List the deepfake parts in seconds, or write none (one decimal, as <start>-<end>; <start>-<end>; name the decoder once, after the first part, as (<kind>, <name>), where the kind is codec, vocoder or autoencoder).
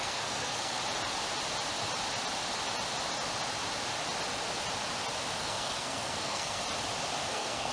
0.0-0.8 (codec, SNAC); 5.4-6.6; 7.3-7.7